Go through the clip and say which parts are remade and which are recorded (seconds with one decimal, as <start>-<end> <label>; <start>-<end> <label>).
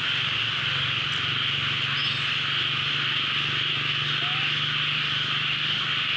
0.0-6.2 recorded